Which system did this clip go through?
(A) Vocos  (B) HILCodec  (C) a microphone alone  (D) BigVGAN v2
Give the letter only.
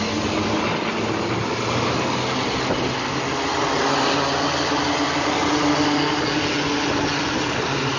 C